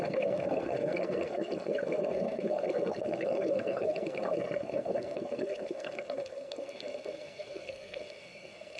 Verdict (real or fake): fake